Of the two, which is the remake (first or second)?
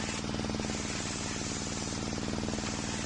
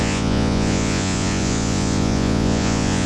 second